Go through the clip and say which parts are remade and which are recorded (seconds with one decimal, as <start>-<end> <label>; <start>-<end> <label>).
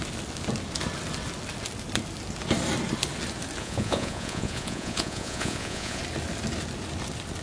0.0-3.6 recorded; 3.6-6.0 remade; 6.0-7.4 recorded